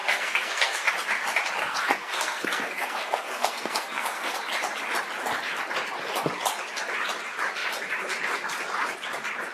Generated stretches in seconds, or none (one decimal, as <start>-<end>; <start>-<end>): 0.0-0.9; 1.7-4.4